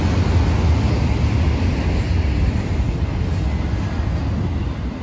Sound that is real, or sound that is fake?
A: real